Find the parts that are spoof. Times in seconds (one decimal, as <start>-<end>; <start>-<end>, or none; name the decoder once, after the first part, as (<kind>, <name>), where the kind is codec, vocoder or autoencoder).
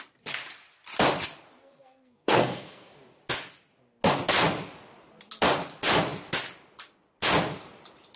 1.6-2.9 (codec, SNAC)